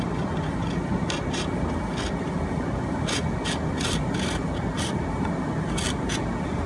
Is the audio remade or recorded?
recorded